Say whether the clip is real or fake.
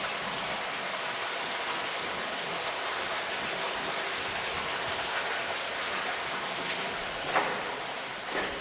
real